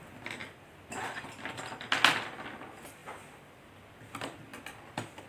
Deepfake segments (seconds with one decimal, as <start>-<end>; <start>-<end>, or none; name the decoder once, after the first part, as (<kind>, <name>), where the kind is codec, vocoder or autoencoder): 0.4-1.7 (vocoder, BigVGAN v2)